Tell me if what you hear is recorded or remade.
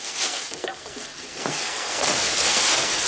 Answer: remade